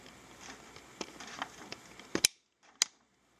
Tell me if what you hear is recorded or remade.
recorded